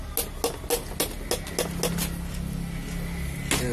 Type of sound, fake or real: real